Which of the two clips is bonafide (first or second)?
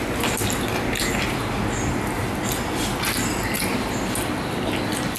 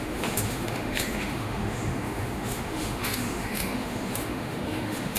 first